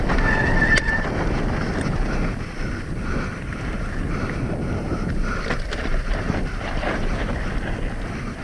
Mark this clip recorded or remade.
remade